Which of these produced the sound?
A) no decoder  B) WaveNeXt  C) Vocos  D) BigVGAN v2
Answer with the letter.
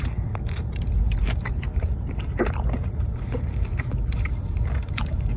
D